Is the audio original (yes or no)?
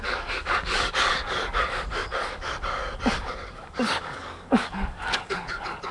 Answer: no